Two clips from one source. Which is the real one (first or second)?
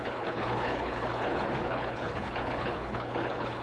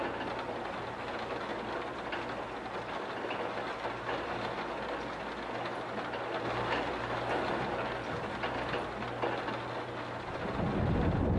second